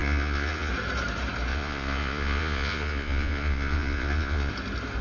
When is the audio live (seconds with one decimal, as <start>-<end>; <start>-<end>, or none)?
0.7-1.5; 4.5-5.0